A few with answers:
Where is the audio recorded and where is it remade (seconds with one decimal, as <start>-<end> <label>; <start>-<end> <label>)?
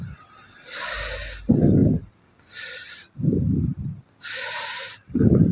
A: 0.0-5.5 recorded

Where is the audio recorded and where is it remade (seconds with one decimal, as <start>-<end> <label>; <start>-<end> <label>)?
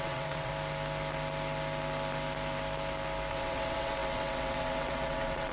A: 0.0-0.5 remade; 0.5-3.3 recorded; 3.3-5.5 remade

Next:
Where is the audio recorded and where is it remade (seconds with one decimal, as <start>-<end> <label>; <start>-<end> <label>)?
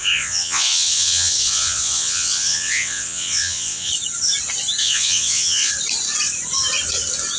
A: 0.0-3.9 remade; 3.9-4.8 recorded; 4.8-5.7 remade; 5.7-7.4 recorded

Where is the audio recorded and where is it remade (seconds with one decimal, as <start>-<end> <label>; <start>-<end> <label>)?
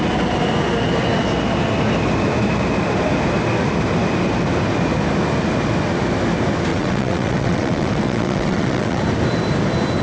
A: 0.0-6.7 recorded; 6.7-9.0 remade; 9.0-10.0 recorded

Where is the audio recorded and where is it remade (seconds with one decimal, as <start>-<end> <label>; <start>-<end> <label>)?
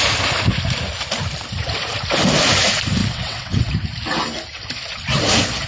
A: 0.0-3.0 recorded; 3.0-3.7 remade; 3.7-5.7 recorded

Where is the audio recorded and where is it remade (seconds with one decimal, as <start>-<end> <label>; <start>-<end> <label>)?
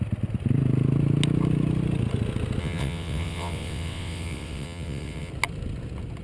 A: 0.0-2.6 recorded; 2.6-5.3 remade; 5.3-6.2 recorded